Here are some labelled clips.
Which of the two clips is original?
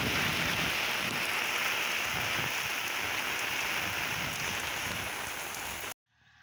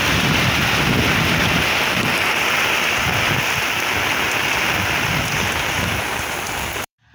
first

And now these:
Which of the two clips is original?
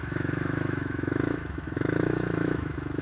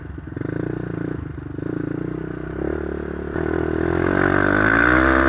second